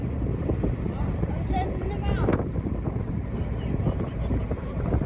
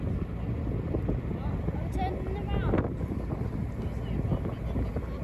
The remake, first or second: first